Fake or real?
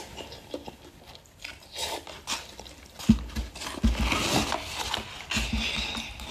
real